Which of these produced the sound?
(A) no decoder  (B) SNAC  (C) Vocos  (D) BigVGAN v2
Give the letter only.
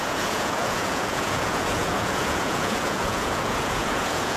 C